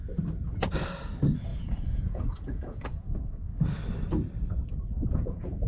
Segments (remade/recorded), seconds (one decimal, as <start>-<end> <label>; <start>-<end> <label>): 0.0-1.5 recorded; 1.5-3.4 remade; 3.4-4.9 recorded; 4.9-5.7 remade